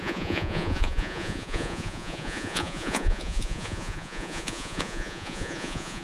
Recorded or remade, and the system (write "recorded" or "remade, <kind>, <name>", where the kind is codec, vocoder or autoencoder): remade, vocoder, Vocos